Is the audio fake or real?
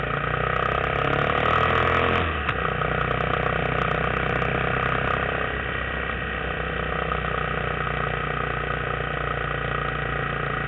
real